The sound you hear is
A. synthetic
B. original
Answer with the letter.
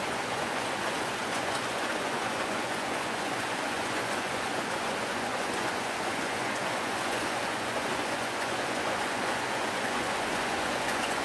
A